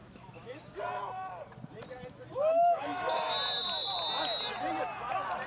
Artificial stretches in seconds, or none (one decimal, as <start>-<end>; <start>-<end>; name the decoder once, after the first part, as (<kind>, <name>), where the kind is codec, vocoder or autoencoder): 0.0-0.8 (autoencoder, DAC-VAE); 2.3-3.3